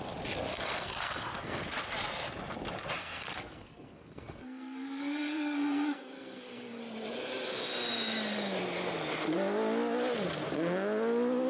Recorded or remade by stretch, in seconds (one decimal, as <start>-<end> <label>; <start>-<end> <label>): 0.0-0.5 recorded; 0.5-1.6 remade; 1.6-3.0 recorded; 3.0-6.8 remade; 6.8-11.5 recorded